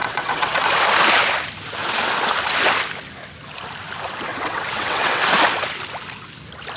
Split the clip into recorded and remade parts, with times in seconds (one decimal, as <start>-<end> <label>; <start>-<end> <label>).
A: 0.0-0.6 remade; 0.6-4.3 recorded; 4.3-5.2 remade; 5.2-6.8 recorded